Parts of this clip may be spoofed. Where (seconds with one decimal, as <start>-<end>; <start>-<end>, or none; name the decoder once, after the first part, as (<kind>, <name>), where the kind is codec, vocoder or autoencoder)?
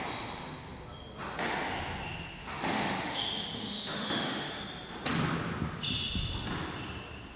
2.4-3.2 (autoencoder, DAC-VAE); 3.6-4.6